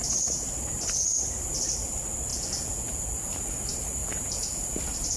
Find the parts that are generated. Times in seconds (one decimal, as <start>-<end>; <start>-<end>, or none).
2.3-3.1; 4.0-4.6